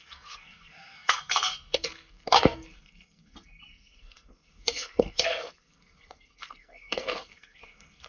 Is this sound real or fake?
fake